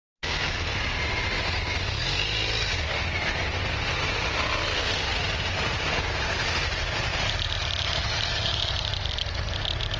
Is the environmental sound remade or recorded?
recorded